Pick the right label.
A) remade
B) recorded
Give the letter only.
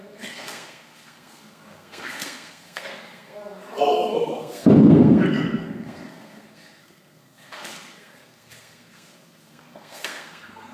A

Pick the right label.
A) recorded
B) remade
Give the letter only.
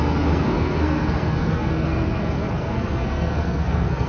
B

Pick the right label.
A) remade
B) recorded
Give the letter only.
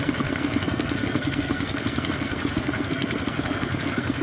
A